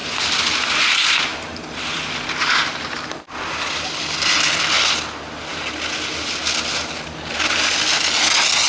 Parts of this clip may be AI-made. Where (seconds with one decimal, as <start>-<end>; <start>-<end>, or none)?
1.3-4.6